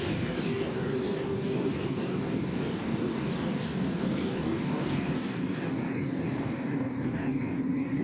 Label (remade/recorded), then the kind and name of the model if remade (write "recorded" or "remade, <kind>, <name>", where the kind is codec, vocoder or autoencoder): remade, codec, DAC